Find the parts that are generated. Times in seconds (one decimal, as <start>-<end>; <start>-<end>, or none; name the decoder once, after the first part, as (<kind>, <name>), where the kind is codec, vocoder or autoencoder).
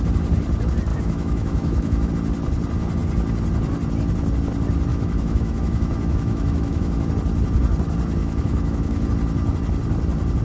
0.9-2.1 (autoencoder, DAC-VAE); 4.9-7.1; 8.2-9.1